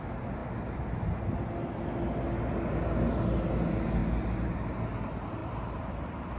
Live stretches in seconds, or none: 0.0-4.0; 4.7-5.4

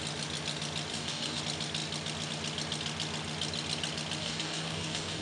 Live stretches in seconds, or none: 0.0-0.9; 1.4-4.2

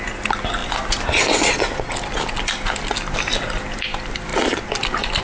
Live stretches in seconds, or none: 0.0-5.2

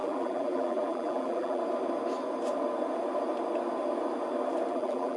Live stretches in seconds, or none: 1.6-4.7